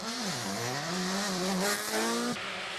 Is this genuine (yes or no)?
yes